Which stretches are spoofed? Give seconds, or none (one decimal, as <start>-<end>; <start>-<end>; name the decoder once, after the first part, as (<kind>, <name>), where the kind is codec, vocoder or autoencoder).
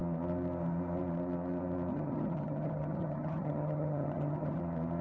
1.9-4.6 (vocoder, HiFi-GAN)